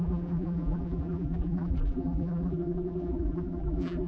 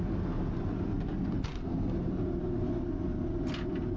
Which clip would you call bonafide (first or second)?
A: second